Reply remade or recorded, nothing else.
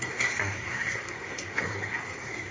remade